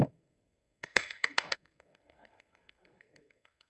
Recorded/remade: remade